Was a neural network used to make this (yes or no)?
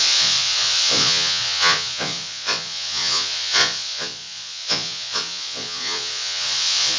yes